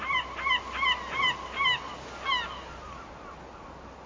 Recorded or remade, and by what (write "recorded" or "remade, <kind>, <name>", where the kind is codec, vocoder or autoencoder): recorded